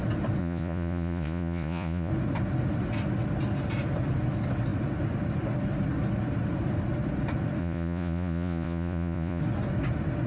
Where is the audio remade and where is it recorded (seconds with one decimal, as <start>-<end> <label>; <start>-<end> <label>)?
0.0-0.4 recorded; 0.4-2.1 remade; 2.1-7.6 recorded; 7.6-9.4 remade; 9.4-10.3 recorded